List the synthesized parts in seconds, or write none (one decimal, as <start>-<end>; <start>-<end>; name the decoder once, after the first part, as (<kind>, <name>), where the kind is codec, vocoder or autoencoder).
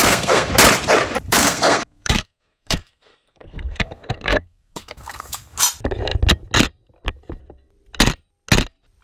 0.0-0.5 (codec, SNAC); 1.3-5.6